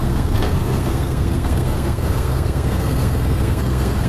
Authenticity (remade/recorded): remade